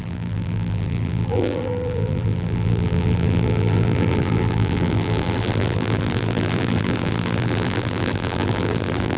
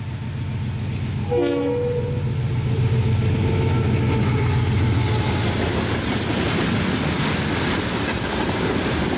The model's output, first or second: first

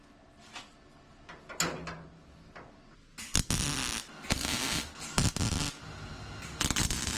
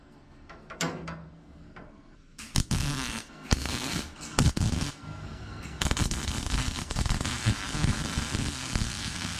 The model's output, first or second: second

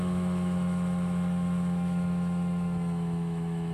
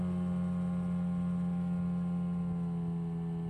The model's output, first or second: first